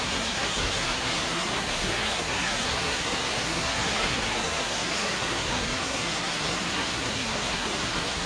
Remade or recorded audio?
remade